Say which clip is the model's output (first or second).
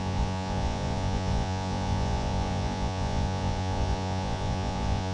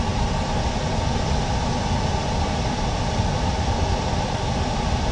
first